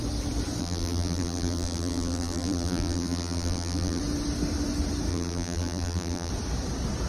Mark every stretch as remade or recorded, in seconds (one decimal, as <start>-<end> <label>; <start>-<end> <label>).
0.0-0.6 recorded; 0.6-4.0 remade; 4.0-5.1 recorded; 5.1-6.3 remade; 6.3-7.1 recorded